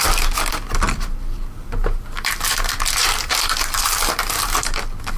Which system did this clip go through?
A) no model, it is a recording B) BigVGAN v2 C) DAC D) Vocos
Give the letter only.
A